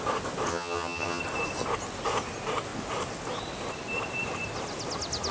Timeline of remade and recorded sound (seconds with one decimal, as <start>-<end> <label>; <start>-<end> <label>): 0.0-0.5 recorded; 0.5-1.2 remade; 1.2-5.3 recorded